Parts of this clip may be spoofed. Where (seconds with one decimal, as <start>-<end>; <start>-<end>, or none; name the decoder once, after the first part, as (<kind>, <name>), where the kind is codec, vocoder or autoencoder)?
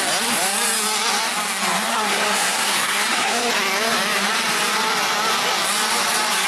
1.9-3.5 (codec, SNAC)